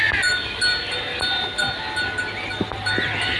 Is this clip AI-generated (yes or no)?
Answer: no